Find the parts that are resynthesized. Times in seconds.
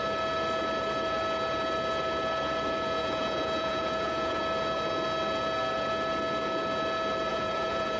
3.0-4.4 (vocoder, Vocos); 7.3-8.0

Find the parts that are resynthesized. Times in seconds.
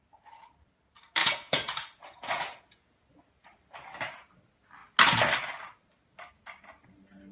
1.2-3.0 (vocoder, Vocos)